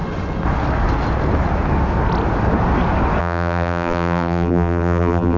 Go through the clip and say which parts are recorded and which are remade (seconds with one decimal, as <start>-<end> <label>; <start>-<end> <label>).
0.0-3.2 recorded; 3.2-5.4 remade